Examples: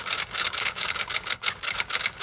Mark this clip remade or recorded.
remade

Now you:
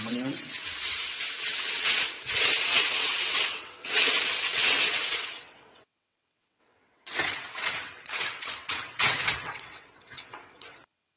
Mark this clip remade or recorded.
remade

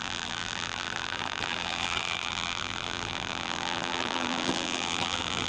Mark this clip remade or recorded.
remade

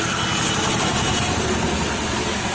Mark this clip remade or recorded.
recorded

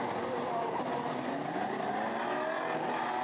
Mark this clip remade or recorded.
recorded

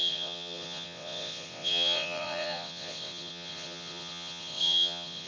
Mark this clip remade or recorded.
remade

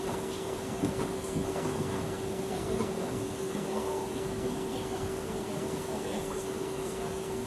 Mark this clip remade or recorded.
remade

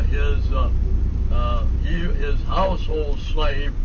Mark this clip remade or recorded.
recorded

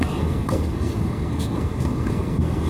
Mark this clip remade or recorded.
remade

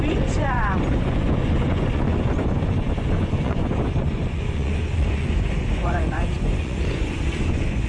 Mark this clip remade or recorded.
remade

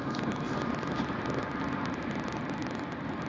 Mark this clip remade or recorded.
recorded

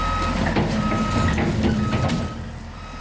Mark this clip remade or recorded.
recorded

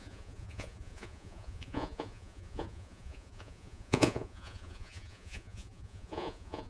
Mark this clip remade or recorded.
remade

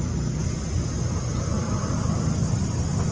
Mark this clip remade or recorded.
recorded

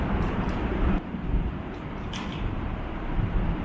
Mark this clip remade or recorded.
remade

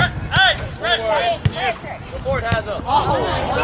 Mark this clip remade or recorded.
recorded